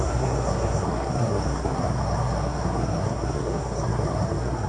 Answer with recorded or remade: remade